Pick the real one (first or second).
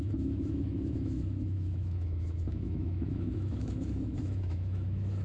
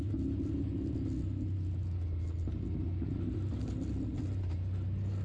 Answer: second